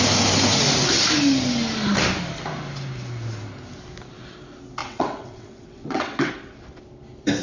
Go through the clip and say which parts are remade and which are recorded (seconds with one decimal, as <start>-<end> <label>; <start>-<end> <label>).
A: 0.0-4.8 recorded; 4.8-6.3 remade; 6.3-7.4 recorded